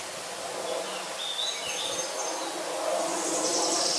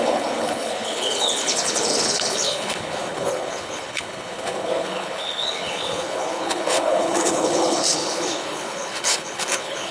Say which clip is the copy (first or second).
second